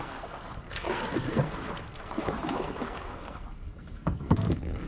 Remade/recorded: remade